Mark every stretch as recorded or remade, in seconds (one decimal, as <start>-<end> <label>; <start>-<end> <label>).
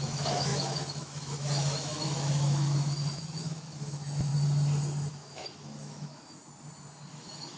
0.0-4.3 remade; 4.3-5.1 recorded; 5.1-6.4 remade; 6.4-7.1 recorded; 7.1-7.6 remade